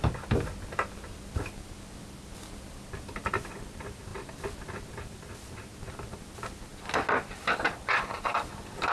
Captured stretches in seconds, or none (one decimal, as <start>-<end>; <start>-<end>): 0.0-8.9